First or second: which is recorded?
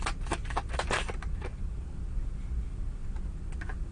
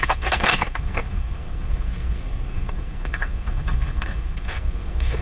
first